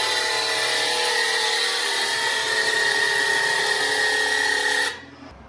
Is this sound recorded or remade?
recorded